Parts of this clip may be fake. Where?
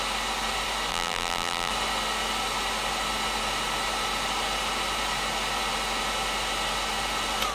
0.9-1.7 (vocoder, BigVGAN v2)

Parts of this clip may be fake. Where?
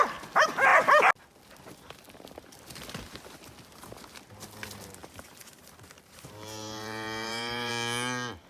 5.0-7.7 (vocoder, BigVGAN v2)